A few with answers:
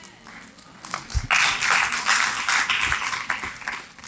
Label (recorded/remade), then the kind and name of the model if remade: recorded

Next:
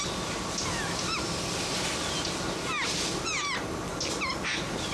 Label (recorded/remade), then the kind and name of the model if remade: recorded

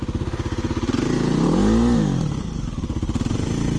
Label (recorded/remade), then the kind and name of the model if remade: recorded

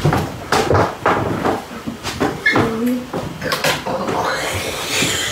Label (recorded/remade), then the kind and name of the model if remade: recorded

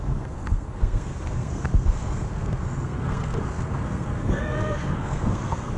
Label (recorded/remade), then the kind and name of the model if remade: remade, codec, SNAC